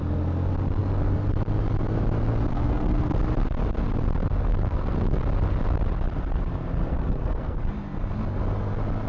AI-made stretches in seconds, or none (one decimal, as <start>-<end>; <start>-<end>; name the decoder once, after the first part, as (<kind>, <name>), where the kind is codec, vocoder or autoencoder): 2.5-3.2 (codec, SNAC); 4.5-5.2; 6.8-7.6